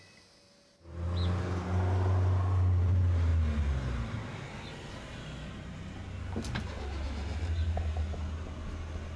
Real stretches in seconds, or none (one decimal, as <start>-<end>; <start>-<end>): 0.0-9.2